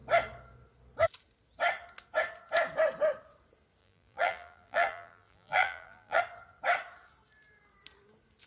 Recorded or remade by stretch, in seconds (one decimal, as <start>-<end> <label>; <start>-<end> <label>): 0.0-3.8 recorded; 3.8-6.2 remade; 6.2-8.5 recorded